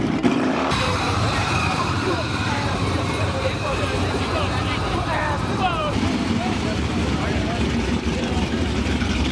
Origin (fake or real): fake